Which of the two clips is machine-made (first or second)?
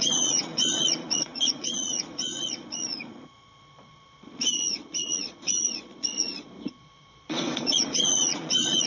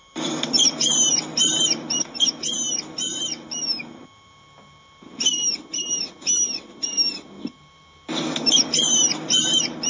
first